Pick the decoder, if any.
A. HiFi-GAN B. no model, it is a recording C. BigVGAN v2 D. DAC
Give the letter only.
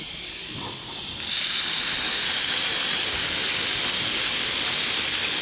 B